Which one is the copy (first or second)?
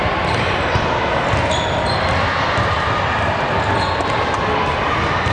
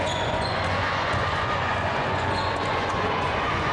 second